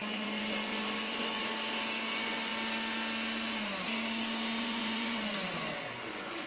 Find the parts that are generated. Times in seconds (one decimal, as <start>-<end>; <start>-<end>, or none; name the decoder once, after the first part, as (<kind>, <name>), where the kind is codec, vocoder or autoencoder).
0.0-1.5 (vocoder, Vocos); 2.1-2.5; 4.6-6.5